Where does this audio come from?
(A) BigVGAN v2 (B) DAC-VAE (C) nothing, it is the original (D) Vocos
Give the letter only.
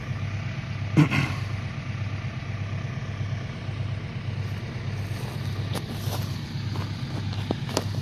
C